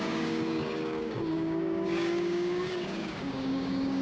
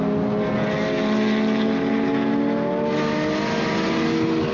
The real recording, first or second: second